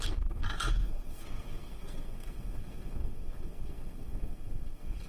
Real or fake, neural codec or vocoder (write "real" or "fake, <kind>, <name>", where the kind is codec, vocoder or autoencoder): fake, codec, SNAC